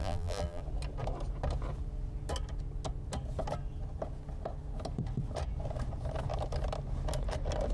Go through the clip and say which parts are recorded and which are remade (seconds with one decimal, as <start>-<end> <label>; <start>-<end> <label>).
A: 0.0-0.6 remade; 0.6-7.7 recorded